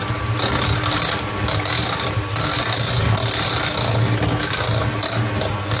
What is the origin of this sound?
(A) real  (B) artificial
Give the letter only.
A